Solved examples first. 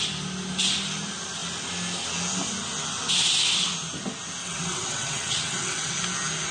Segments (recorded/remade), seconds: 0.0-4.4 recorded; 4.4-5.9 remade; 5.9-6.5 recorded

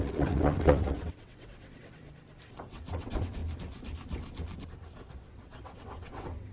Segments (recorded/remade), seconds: 0.0-2.0 remade; 2.0-2.6 recorded; 2.6-3.4 remade; 3.4-5.1 recorded; 5.1-6.5 remade

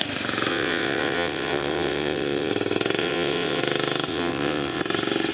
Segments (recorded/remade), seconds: 0.0-0.5 recorded; 0.5-2.5 remade; 2.5-3.0 recorded; 3.0-3.6 remade; 3.6-4.1 recorded; 4.1-4.8 remade; 4.8-5.3 recorded

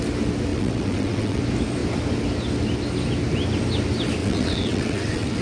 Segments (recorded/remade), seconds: 0.0-0.5 recorded; 0.5-1.4 remade; 1.4-4.2 recorded; 4.2-5.4 remade

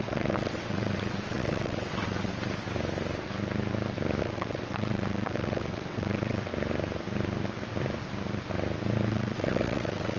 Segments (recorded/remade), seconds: 0.0-2.3 remade; 2.3-4.2 recorded; 4.2-6.5 remade; 6.5-9.1 recorded; 9.1-10.2 remade

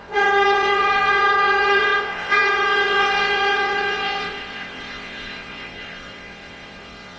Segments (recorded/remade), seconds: 0.0-7.2 remade

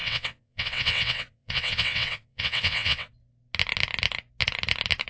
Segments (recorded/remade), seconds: 0.0-3.1 remade; 3.1-5.1 recorded

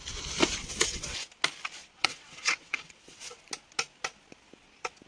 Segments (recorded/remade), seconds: 0.0-0.6 recorded; 0.6-1.3 remade; 1.3-1.8 recorded; 1.8-3.4 remade; 3.4-5.1 recorded